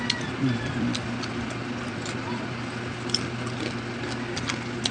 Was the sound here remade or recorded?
recorded